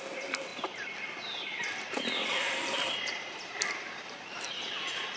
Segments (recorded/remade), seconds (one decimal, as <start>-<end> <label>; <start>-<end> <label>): 0.0-5.2 remade